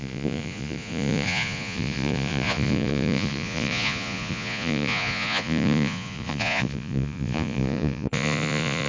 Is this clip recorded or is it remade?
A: remade